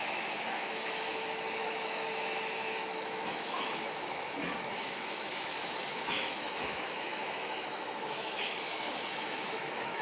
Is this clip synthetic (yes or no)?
yes